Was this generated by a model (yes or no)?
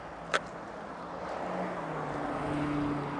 no